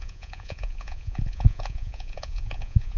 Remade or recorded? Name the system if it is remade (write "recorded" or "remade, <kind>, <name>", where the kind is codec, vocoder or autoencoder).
remade, vocoder, Vocos